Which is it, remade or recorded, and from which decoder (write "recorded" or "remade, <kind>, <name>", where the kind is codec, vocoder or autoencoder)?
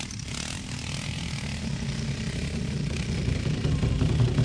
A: recorded